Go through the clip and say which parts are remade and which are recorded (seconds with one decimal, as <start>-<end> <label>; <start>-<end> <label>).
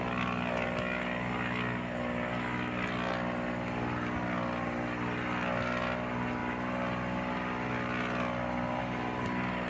0.0-9.7 recorded